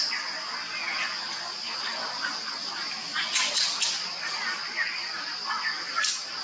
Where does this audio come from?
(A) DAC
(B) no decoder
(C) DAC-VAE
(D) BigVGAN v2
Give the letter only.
B